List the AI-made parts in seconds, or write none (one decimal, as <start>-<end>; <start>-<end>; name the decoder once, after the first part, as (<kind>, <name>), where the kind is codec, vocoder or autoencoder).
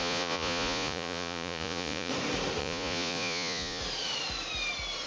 0.0-2.1 (vocoder, Vocos); 2.6-3.8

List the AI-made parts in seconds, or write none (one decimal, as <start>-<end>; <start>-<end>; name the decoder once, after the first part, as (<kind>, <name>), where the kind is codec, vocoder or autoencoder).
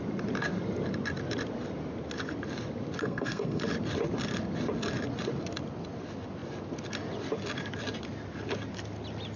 3.0-3.6 (codec, SNAC)